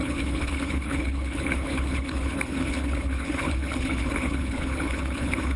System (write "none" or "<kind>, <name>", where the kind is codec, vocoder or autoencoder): codec, HILCodec